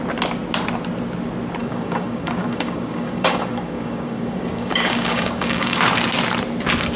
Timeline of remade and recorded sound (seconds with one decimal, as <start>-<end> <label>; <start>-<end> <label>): 0.0-1.6 recorded; 1.6-5.8 remade; 5.8-7.0 recorded